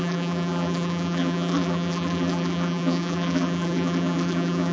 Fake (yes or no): yes